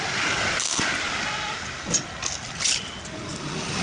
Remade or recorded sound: recorded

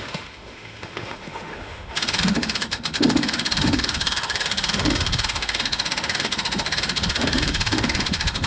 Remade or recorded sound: remade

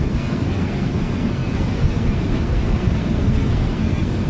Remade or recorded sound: remade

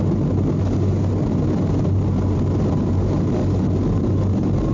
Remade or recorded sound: recorded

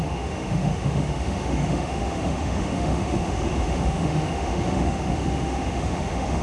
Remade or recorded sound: remade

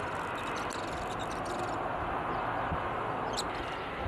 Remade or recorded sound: recorded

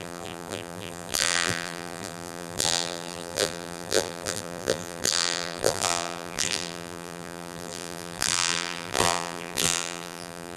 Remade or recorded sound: remade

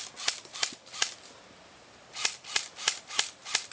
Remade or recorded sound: recorded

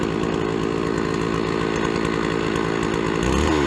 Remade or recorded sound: recorded